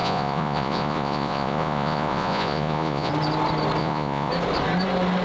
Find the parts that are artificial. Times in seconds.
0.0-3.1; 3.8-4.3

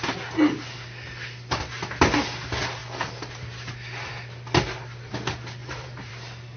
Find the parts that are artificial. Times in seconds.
5.6-6.1

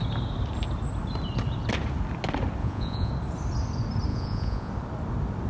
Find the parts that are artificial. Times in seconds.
2.6-3.1; 4.1-4.7

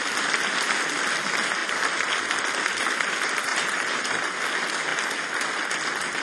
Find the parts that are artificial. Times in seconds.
3.5-4.1

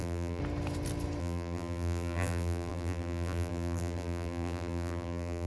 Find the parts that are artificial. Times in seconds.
0.0-0.4; 1.2-5.5

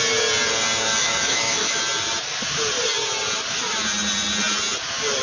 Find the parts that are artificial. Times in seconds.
1.0-1.8

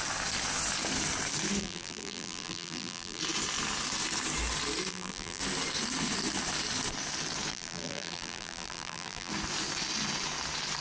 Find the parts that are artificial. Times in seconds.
1.6-3.2; 4.9-5.4; 7.5-9.3